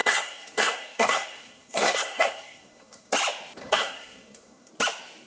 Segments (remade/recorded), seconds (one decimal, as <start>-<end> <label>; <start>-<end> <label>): 0.0-3.1 remade; 3.1-3.6 recorded; 3.6-4.7 remade; 4.7-5.3 recorded